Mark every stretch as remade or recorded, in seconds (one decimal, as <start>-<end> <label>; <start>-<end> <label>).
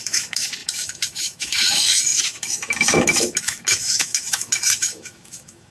0.0-5.7 remade